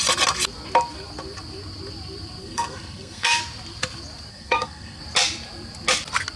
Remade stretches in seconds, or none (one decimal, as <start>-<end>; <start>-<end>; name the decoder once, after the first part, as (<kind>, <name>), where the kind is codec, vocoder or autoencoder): 2.4-3.4 (codec, SNAC); 4.3-5.0